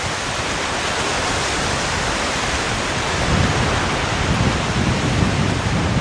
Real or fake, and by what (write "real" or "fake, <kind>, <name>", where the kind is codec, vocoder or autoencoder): real